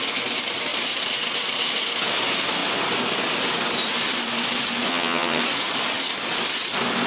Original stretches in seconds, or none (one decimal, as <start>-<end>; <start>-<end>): 0.0-4.9; 5.4-7.1